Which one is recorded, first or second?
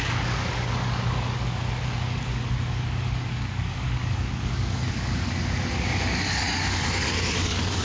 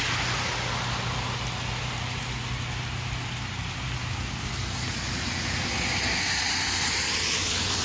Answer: second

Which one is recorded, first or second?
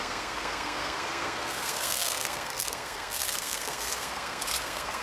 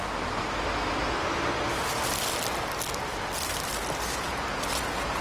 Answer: second